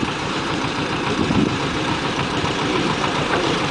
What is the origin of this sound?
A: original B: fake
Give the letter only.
B